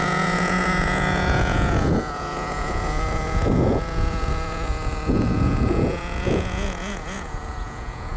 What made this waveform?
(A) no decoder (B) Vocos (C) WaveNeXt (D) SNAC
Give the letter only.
B